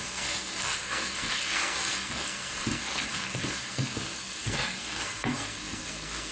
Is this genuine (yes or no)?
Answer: no